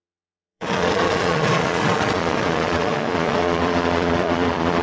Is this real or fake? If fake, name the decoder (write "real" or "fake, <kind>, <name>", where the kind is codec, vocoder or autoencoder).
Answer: fake, vocoder, Vocos